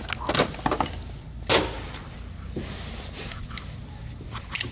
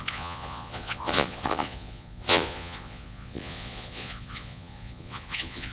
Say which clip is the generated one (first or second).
second